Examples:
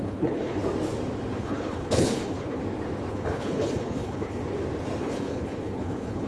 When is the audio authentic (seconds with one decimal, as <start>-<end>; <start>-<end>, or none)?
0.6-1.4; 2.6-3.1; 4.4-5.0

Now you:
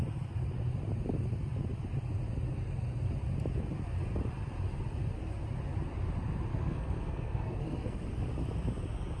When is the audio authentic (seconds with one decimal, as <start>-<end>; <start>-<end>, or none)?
0.0-6.5; 8.3-9.2

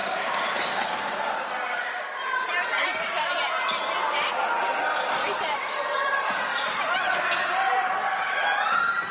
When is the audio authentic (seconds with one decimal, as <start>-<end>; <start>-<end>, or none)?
3.3-5.2; 7.1-9.1